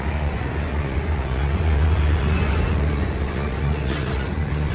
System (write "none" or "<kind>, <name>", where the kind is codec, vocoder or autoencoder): vocoder, Vocos